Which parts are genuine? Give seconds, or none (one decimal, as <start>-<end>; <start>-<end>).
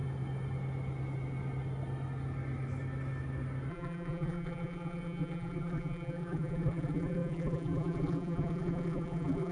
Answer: 0.0-3.7